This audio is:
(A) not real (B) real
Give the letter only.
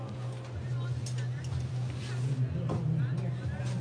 B